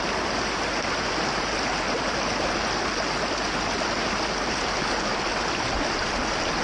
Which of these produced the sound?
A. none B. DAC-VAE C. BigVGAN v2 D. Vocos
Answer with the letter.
A